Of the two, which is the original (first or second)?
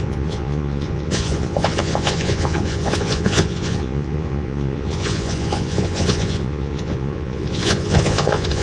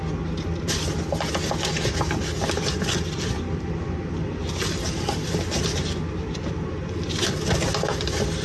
second